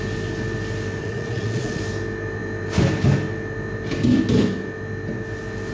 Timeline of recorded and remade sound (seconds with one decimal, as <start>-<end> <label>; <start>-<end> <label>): 0.0-1.0 recorded; 1.0-1.8 remade; 1.8-5.7 recorded